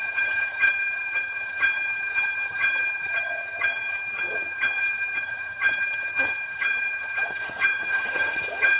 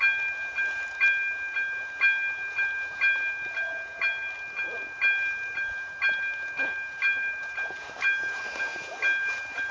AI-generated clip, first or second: first